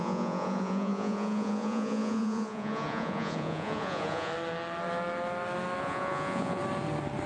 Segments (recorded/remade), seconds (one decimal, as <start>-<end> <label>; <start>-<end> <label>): 0.0-4.3 remade; 4.3-5.8 recorded; 5.8-6.6 remade; 6.6-7.3 recorded